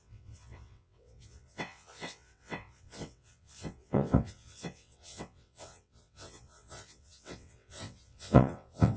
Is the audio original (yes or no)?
no